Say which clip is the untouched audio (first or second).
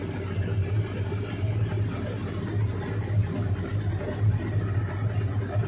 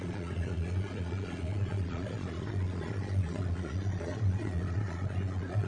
first